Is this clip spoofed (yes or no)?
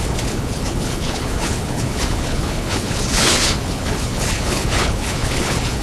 yes